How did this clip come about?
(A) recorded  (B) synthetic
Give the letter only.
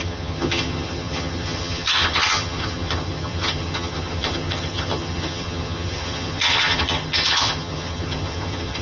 B